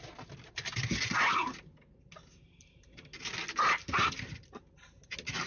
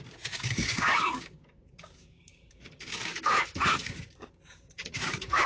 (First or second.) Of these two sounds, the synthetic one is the second